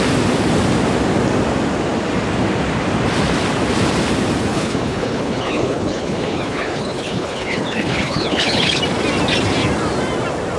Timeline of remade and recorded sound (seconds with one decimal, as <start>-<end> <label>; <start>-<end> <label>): 0.0-4.5 recorded; 4.5-8.8 remade; 8.8-10.6 recorded